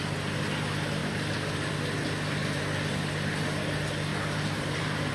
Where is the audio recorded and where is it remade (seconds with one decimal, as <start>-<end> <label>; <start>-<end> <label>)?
0.0-1.0 recorded; 1.0-2.6 remade; 2.6-4.1 recorded; 4.1-5.1 remade